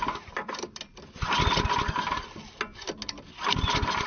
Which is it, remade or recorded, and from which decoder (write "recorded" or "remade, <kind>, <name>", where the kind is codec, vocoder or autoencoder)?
recorded